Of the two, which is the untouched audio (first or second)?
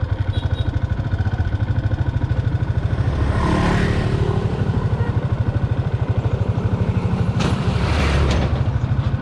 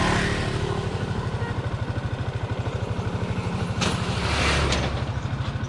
second